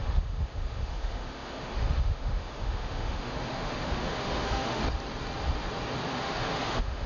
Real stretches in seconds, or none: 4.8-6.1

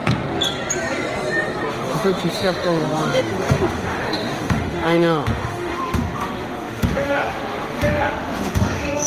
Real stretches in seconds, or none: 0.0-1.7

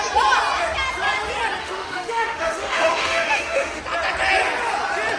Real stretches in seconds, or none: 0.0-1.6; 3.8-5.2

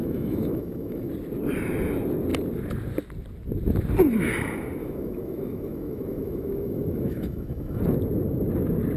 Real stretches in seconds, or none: 1.1-4.8; 7.8-9.0